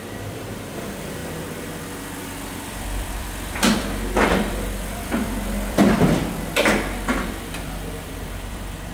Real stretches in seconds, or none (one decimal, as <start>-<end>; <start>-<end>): 1.2-2.2